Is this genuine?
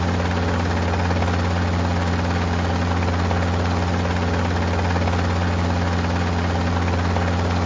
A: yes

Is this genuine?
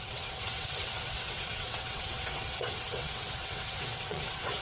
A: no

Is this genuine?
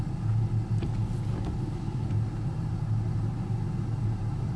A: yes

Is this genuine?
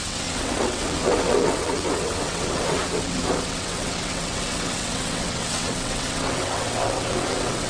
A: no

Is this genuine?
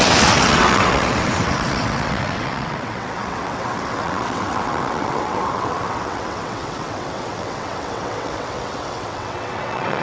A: no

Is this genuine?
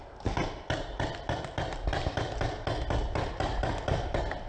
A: yes